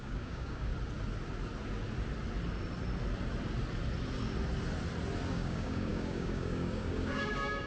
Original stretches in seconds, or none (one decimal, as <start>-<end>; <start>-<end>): 0.7-5.3